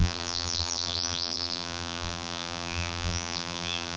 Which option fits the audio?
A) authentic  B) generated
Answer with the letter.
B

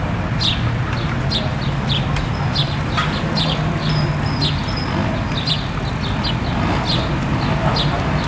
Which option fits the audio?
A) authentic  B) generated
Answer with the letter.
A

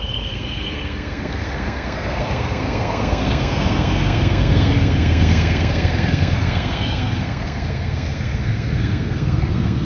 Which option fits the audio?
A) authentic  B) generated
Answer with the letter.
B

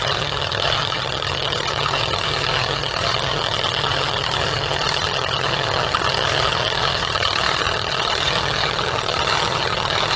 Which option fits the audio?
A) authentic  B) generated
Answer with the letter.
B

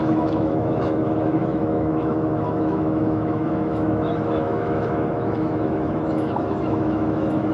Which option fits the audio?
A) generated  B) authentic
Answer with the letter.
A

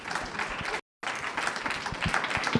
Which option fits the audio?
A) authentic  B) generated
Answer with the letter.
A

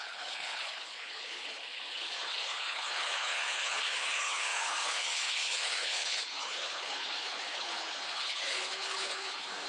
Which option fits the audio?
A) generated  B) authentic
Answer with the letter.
A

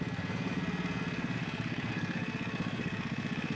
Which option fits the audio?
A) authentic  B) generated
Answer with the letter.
B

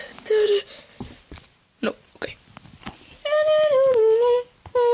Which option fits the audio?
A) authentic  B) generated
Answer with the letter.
A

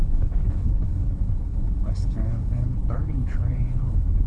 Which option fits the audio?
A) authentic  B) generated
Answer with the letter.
B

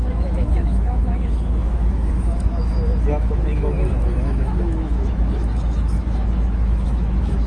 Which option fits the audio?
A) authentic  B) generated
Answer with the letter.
B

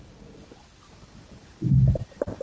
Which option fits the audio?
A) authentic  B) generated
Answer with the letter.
B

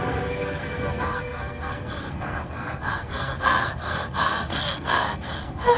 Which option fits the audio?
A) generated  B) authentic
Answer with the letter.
A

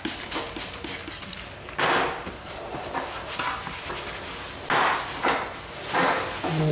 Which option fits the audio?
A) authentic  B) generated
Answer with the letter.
A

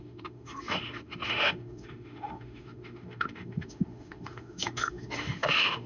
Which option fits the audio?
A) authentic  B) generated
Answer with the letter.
B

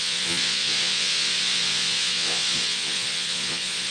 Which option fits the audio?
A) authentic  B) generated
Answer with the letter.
B